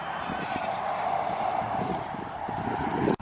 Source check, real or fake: real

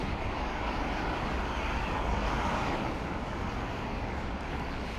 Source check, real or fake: fake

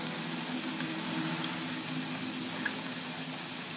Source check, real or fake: real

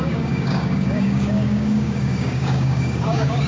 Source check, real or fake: fake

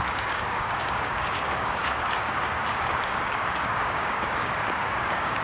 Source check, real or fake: fake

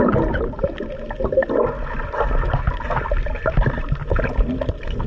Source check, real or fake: real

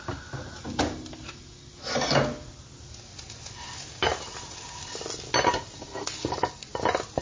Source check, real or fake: real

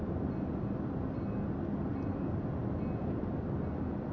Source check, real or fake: real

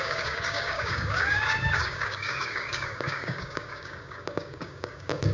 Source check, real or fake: fake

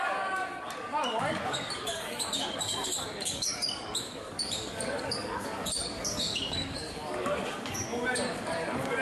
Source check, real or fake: fake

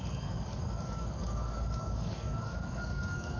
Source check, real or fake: fake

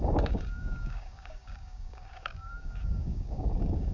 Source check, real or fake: fake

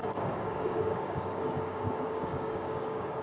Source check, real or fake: fake